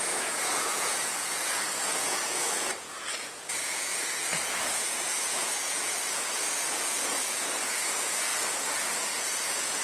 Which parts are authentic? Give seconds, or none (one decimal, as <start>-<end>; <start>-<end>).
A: none